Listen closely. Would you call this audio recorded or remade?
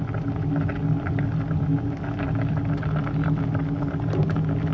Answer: recorded